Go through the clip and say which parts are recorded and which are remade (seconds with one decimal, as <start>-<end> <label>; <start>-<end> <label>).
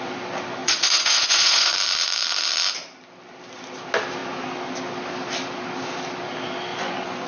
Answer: 0.0-0.6 recorded; 0.6-1.7 remade; 1.7-6.7 recorded; 6.7-7.3 remade